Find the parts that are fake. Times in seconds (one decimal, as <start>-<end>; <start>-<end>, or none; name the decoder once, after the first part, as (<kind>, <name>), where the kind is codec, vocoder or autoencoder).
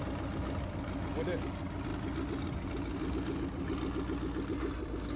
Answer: none